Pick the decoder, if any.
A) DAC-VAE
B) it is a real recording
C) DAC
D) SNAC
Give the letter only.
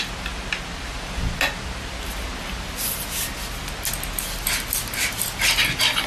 B